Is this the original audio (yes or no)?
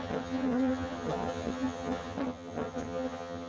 no